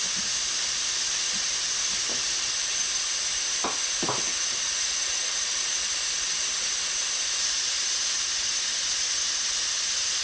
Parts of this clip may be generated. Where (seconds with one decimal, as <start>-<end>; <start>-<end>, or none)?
4.3-5.9